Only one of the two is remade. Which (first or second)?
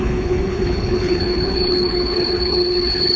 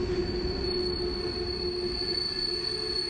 first